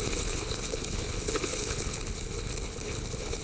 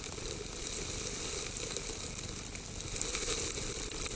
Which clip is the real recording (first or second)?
second